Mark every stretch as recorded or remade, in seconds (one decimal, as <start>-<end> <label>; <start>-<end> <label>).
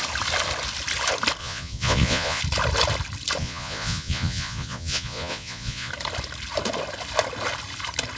0.0-1.4 recorded; 1.4-2.4 remade; 2.4-3.4 recorded; 3.4-5.9 remade; 5.9-8.2 recorded